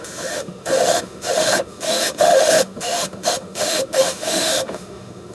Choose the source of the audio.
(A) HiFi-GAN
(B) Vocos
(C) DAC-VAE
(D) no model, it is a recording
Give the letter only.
C